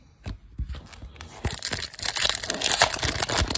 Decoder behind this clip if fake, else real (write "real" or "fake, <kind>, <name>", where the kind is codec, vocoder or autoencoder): real